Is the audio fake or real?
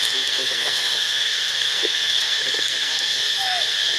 fake